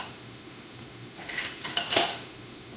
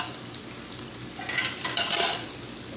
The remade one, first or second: first